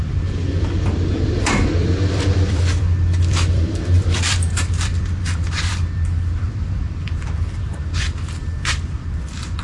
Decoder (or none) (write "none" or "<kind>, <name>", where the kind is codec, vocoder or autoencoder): vocoder, BigVGAN v2